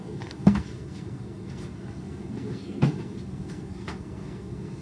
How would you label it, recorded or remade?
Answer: remade